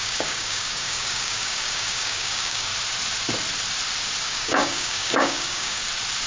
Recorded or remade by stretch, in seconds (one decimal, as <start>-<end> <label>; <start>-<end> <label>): 0.0-2.7 remade; 2.7-4.2 recorded; 4.2-5.8 remade; 5.8-6.3 recorded